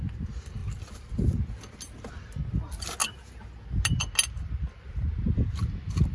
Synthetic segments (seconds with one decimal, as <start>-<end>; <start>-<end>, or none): none

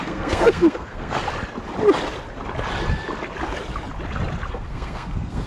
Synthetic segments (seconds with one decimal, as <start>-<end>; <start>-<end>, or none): 0.0-1.2; 4.5-5.5

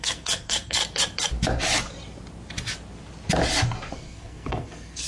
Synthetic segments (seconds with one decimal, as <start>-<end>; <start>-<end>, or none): 0.0-0.8; 3.9-5.1

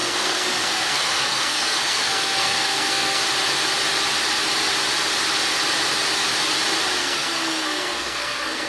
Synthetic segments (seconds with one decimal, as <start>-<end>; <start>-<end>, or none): 0.0-3.2; 7.0-8.7